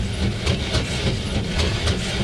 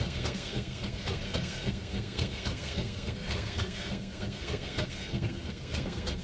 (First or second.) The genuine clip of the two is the first